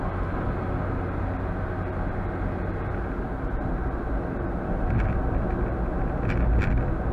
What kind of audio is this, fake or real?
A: real